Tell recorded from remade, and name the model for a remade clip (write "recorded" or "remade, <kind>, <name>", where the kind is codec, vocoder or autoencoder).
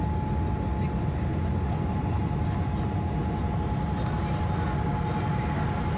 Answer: recorded